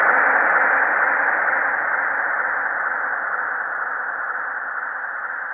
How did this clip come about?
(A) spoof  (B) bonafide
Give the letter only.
B